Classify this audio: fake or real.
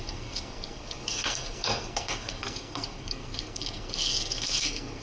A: fake